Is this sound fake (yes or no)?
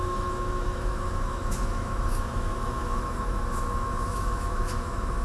yes